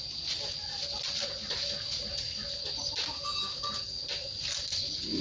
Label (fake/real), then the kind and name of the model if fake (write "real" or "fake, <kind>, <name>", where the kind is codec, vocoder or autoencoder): real